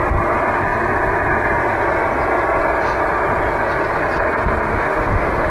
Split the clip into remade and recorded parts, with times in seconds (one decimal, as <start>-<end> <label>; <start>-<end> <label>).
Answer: 0.0-4.7 recorded; 4.7-5.5 remade